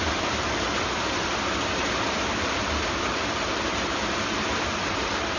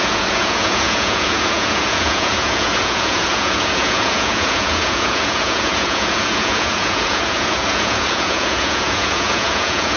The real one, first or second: first